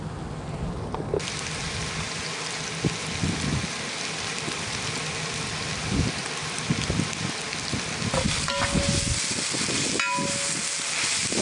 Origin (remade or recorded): recorded